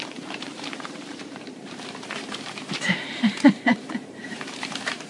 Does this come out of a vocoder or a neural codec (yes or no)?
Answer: yes